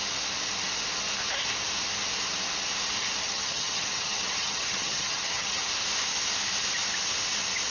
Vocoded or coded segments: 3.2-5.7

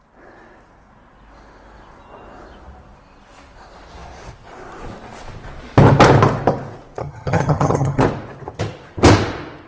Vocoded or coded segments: 7.0-8.0